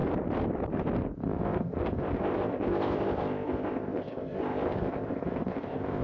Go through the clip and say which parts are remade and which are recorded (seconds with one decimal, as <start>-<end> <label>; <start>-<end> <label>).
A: 0.0-1.2 recorded; 1.2-6.0 remade

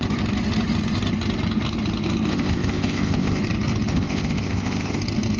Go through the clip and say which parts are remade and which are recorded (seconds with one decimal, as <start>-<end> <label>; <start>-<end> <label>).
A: 0.0-2.3 recorded; 2.3-3.4 remade; 3.4-3.9 recorded; 3.9-5.0 remade; 5.0-5.4 recorded

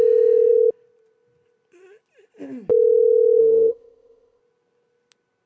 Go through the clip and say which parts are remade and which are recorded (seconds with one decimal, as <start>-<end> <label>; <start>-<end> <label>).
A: 0.0-3.4 recorded; 3.4-4.4 remade; 4.4-5.5 recorded

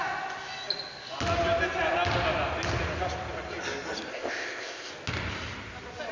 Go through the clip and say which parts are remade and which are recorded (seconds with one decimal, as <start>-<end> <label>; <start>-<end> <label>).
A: 0.0-4.1 recorded; 4.1-4.9 remade; 4.9-6.1 recorded

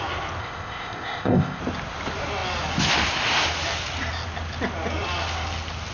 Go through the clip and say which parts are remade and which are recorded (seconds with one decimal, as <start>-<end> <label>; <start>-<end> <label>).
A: 0.0-0.4 recorded; 0.4-1.6 remade; 1.6-5.9 recorded

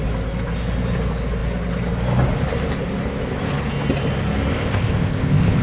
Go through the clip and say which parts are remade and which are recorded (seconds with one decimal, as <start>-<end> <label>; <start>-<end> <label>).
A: 0.0-4.5 recorded; 4.5-5.6 remade

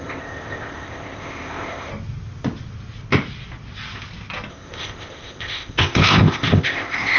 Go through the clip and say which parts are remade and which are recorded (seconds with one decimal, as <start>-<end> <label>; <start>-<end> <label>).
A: 0.0-1.9 remade; 1.9-4.5 recorded; 4.5-7.2 remade